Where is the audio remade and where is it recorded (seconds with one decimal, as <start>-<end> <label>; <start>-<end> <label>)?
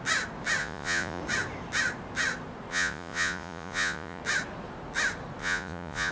0.0-0.6 recorded; 0.6-1.2 remade; 1.2-2.7 recorded; 2.7-4.2 remade; 4.2-5.4 recorded; 5.4-6.1 remade